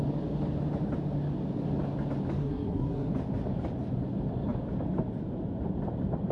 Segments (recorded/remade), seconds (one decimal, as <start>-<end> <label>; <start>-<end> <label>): 0.0-2.4 recorded; 2.4-3.1 remade; 3.1-6.3 recorded